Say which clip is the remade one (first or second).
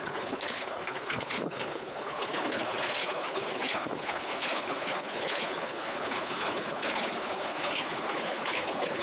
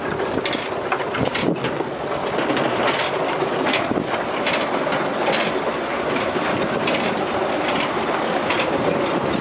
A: first